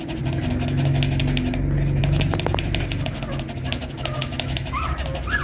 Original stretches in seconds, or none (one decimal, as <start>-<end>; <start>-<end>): 0.0-0.5; 1.2-4.3; 4.9-5.4